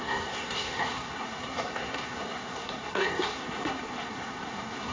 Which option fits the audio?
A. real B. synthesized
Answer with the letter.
B